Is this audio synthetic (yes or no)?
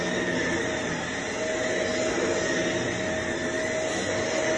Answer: no